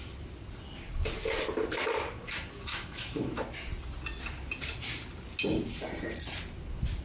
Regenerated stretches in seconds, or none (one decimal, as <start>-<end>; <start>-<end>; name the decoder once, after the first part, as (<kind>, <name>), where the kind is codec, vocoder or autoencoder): 2.7-3.3 (autoencoder, DAC-VAE)